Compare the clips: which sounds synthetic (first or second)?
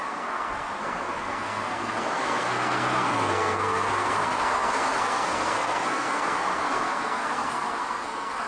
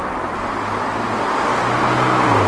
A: first